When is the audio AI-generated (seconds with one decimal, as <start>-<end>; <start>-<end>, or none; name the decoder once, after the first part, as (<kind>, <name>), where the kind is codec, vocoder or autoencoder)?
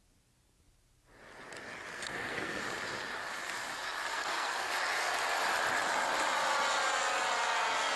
1.9-2.6 (codec, SNAC); 4.1-4.7